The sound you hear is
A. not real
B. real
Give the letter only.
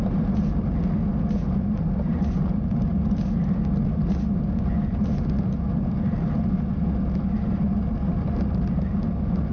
B